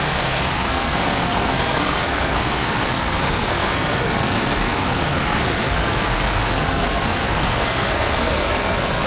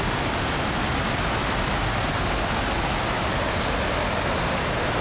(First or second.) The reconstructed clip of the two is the first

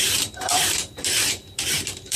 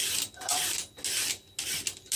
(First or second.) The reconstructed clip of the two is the first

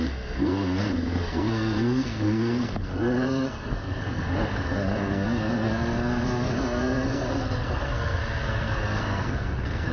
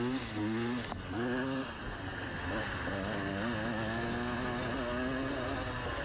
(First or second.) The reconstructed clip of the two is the first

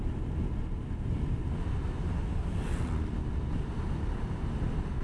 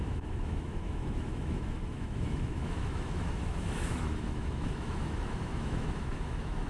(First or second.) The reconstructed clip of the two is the second